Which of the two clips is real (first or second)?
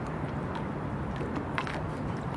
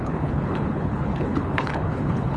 first